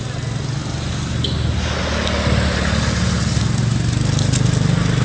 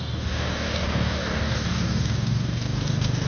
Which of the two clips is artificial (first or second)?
second